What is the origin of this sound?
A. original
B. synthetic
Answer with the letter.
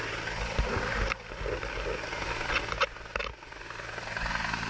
A